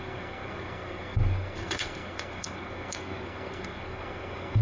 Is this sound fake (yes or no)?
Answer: yes